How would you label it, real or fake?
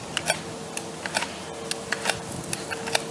real